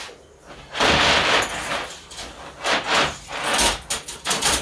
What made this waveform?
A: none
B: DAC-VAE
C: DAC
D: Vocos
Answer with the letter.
A